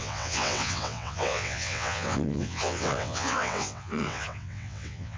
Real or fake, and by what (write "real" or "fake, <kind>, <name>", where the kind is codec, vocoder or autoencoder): fake, vocoder, WaveNeXt